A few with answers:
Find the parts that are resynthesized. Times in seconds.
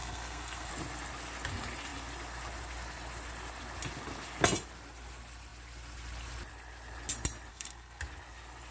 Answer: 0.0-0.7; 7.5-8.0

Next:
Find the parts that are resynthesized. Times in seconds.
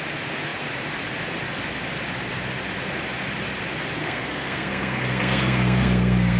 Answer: 4.0-6.4